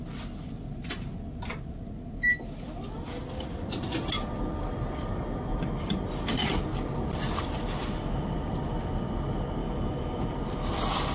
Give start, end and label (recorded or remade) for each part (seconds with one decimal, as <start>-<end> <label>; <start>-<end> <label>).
0.0-9.6 recorded; 9.6-10.3 remade; 10.3-11.1 recorded